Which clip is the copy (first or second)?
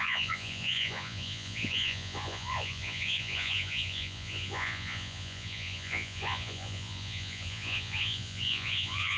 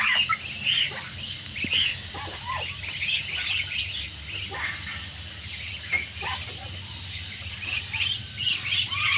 first